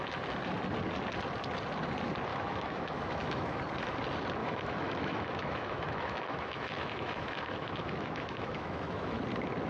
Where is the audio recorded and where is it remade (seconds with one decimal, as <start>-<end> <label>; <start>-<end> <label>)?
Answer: 0.0-2.3 recorded; 2.3-3.6 remade; 3.6-4.4 recorded; 4.4-9.2 remade; 9.2-9.7 recorded